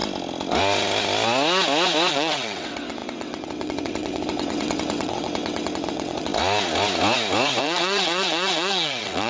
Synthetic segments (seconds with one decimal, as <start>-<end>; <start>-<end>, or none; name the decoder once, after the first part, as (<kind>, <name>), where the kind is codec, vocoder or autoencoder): 2.1-6.3 (vocoder, WaveNeXt); 7.6-9.3